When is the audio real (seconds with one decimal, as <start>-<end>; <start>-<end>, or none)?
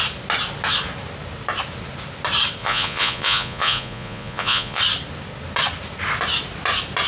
0.0-2.6; 4.8-7.1